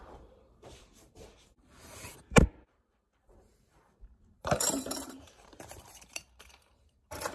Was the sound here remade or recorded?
remade